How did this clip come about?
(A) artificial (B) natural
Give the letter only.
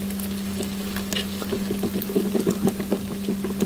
B